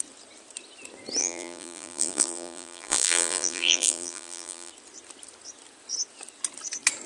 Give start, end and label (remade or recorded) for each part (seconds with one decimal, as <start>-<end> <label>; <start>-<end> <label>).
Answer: 0.0-1.2 recorded; 1.2-4.7 remade; 4.7-7.1 recorded